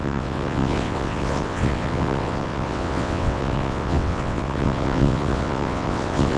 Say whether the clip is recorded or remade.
remade